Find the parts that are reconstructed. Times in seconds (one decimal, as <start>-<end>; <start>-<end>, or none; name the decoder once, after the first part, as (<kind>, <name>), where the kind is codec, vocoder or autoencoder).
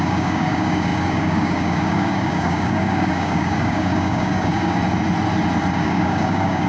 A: 0.0-4.8 (codec, DAC); 5.7-6.7